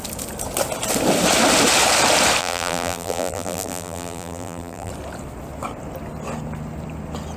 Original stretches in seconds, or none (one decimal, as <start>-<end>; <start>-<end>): 0.0-2.4; 4.9-7.4